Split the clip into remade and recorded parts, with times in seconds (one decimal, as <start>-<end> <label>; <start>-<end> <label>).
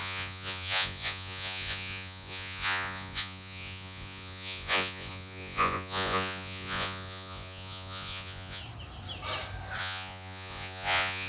0.0-8.6 remade; 8.6-9.8 recorded; 9.8-11.3 remade